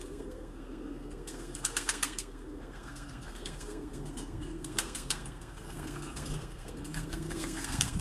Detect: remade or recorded remade